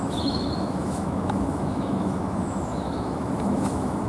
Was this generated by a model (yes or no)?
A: yes